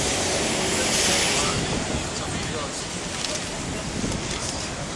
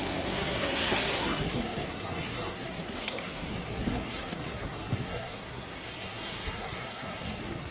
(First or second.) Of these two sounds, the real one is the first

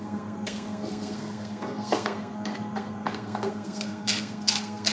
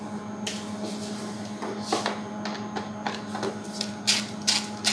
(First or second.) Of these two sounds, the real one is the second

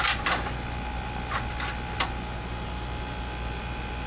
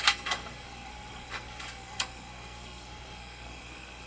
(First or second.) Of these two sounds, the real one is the first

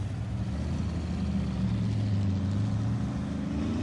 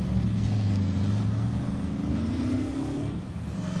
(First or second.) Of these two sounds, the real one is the first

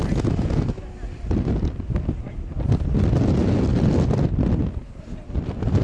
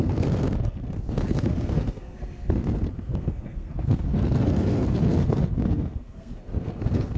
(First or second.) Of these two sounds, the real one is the first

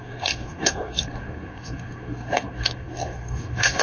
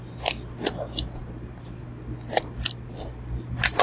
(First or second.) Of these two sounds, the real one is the second